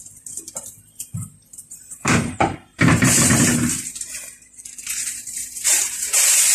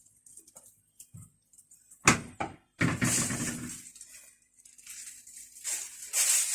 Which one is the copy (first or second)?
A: first